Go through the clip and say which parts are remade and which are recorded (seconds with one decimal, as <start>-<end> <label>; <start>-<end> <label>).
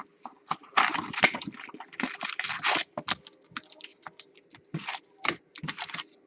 0.0-3.9 recorded; 3.9-5.4 remade; 5.4-6.3 recorded